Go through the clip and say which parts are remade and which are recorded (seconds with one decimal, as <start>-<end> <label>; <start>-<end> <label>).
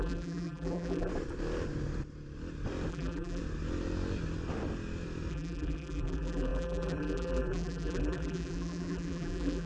0.0-1.1 remade; 1.1-2.9 recorded; 2.9-3.4 remade; 3.4-5.3 recorded; 5.3-9.7 remade